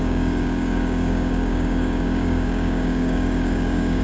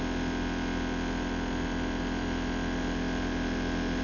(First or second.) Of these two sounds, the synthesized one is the first